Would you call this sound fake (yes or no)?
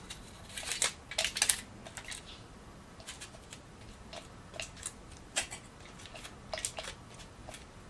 no